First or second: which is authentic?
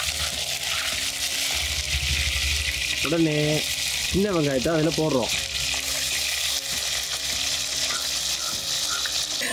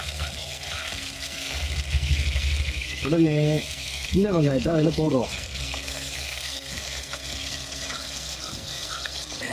first